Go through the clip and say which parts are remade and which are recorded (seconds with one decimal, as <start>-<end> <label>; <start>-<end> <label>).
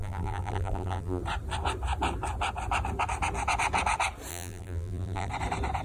0.0-1.2 remade; 1.2-4.3 recorded; 4.3-5.3 remade; 5.3-5.8 recorded